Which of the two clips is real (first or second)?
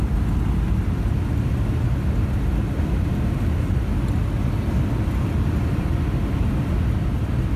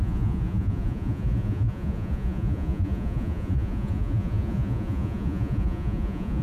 first